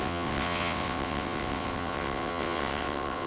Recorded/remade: remade